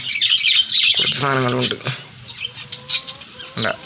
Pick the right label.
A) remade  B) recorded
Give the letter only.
B